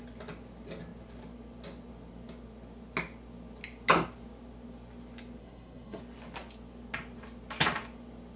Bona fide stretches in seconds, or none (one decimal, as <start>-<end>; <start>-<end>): 0.0-5.4; 6.0-8.4